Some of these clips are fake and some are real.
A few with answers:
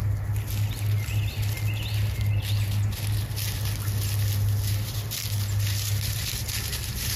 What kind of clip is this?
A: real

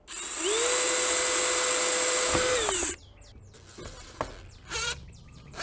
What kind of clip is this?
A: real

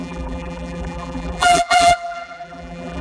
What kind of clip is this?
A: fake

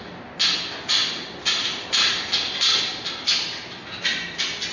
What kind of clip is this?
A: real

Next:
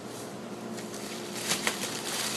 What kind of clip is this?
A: fake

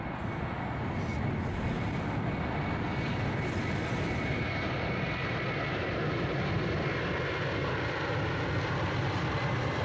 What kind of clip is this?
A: real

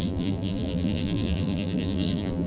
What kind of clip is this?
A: fake